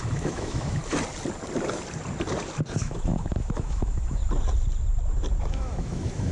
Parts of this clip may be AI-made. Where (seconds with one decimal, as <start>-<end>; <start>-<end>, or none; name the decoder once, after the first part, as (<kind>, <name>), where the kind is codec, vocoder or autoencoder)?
0.0-0.8 (autoencoder, DAC-VAE); 2.8-4.2; 5.5-6.3